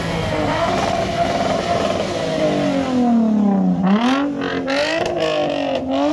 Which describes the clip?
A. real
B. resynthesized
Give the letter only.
A